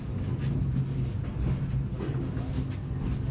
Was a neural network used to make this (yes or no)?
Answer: no